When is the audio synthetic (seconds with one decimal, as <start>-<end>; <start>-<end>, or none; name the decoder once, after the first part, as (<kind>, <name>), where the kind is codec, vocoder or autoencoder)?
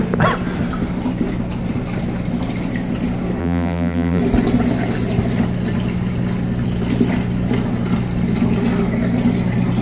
3.4-4.2 (vocoder, BigVGAN v2)